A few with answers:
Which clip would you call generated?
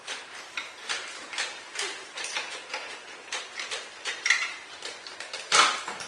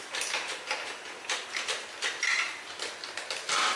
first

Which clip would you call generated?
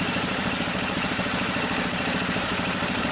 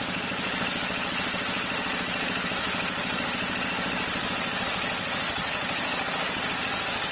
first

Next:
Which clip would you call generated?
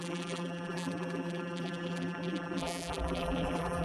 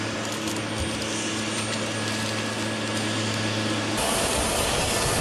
first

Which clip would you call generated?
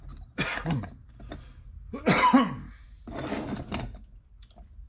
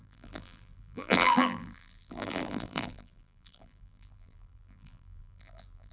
second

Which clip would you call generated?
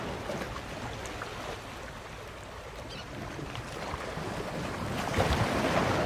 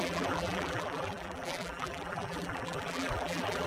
second